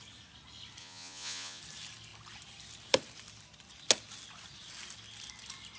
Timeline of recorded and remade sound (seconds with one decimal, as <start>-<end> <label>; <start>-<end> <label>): 0.0-0.8 recorded; 0.8-1.6 remade; 1.6-5.8 recorded